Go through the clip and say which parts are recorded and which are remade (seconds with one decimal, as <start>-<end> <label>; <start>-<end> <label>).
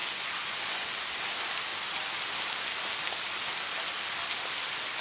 0.0-0.9 remade; 0.9-5.0 recorded